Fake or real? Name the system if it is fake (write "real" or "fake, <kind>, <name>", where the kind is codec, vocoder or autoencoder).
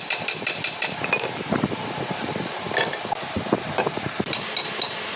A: real